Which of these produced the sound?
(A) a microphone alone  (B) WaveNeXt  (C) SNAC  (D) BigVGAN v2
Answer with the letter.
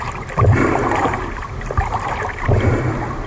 D